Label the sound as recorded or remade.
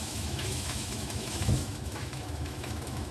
remade